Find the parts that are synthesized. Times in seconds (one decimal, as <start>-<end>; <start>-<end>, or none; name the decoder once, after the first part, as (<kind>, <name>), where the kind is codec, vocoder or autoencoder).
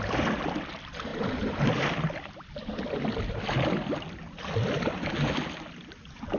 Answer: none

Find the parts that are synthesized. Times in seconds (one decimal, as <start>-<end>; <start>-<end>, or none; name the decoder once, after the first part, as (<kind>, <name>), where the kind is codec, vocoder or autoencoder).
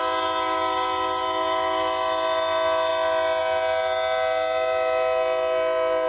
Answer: none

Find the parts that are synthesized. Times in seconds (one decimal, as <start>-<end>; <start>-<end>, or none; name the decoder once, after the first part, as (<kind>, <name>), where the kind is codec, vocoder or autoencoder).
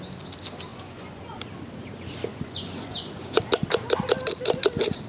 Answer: 0.7-1.2 (vocoder, Vocos); 2.3-3.4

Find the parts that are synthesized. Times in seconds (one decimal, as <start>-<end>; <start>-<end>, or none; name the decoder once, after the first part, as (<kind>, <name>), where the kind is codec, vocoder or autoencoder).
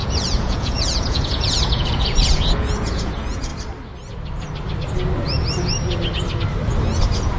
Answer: 0.0-3.5 (vocoder, Vocos); 7.0-7.4